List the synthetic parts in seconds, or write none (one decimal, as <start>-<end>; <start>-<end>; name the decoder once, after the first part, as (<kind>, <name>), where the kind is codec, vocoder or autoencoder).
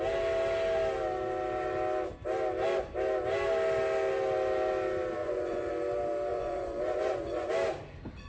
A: 5.2-5.7 (vocoder, Vocos); 6.3-7.5